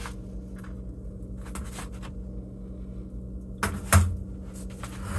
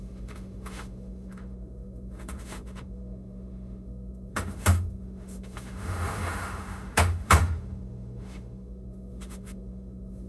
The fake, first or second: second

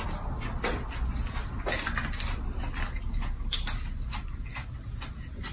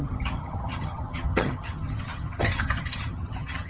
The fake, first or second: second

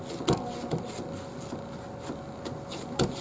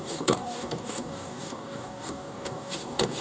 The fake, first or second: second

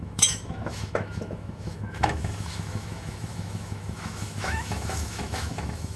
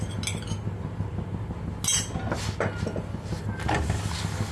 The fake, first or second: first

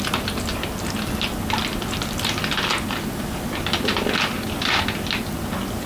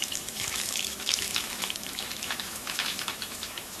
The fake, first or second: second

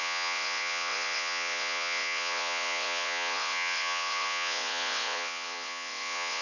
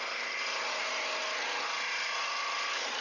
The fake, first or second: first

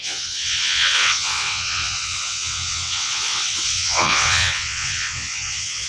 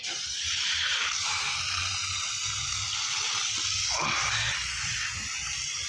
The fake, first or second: first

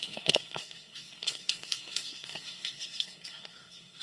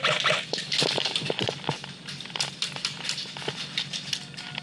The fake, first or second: first